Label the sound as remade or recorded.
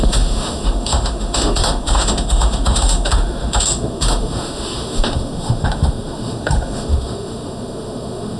remade